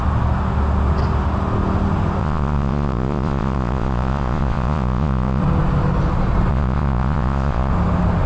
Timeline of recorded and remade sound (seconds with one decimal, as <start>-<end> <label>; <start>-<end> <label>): 0.0-2.2 recorded; 2.2-5.4 remade; 5.4-6.5 recorded; 6.5-7.7 remade; 7.7-8.3 recorded